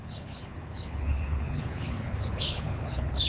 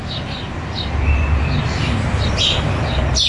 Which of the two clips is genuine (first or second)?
second